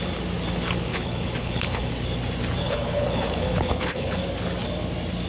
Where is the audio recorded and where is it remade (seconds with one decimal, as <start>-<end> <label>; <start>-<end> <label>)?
0.0-0.9 recorded; 0.9-1.9 remade; 1.9-2.6 recorded; 2.6-4.2 remade; 4.2-5.3 recorded